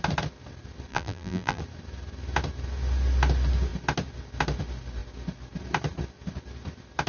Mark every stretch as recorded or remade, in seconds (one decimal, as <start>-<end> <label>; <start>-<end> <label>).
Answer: 0.0-0.9 recorded; 0.9-1.6 remade; 1.6-7.1 recorded